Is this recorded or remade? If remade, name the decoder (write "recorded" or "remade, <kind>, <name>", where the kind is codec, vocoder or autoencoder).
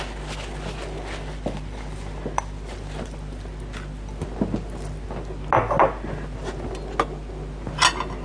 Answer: recorded